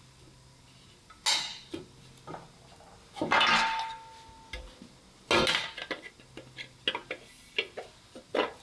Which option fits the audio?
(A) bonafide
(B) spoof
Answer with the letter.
A